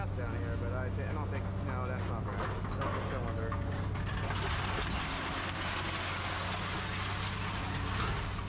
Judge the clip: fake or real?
real